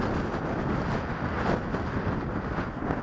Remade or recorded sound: recorded